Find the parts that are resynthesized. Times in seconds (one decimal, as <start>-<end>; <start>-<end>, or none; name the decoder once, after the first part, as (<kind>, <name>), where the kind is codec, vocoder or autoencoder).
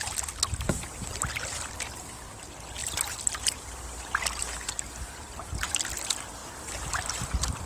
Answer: 2.8-4.4 (vocoder, BigVGAN v2)